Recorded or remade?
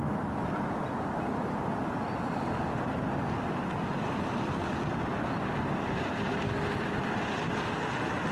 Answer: recorded